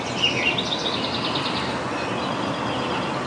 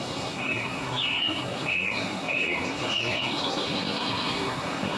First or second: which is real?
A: first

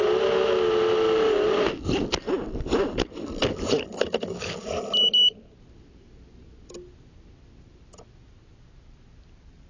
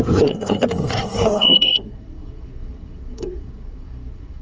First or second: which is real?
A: first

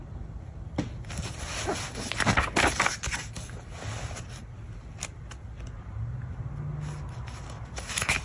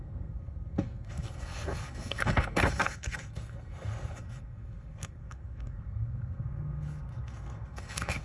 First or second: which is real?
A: first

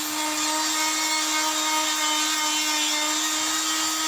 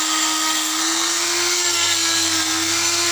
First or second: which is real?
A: first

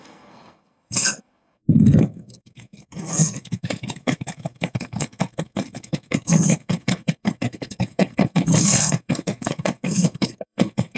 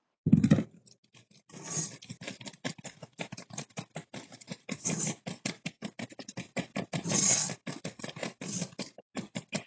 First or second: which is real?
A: second